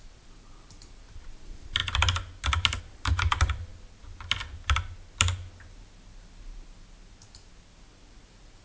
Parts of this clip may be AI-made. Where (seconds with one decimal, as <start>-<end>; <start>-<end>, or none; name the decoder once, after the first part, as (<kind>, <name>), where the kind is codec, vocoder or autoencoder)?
0.0-1.8 (vocoder, BigVGAN v2); 2.8-3.7; 7.8-8.6